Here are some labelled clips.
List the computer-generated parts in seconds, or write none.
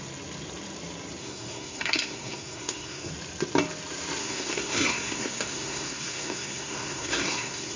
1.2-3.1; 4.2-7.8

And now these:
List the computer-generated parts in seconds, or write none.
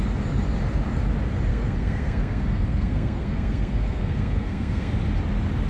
1.5-4.9